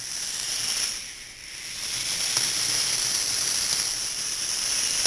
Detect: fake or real fake